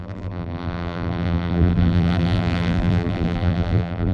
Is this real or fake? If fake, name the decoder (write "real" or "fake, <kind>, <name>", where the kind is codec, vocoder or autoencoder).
fake, vocoder, BigVGAN v2